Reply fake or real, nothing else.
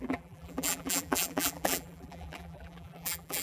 fake